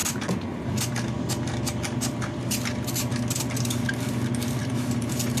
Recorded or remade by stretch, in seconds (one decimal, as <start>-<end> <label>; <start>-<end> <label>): 0.0-4.6 recorded; 4.6-5.4 remade